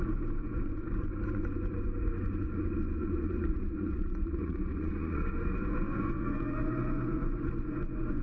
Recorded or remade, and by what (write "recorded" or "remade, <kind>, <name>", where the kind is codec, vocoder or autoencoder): remade, vocoder, Vocos